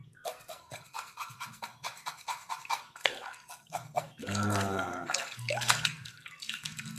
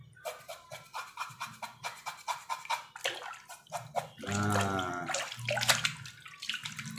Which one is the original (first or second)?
second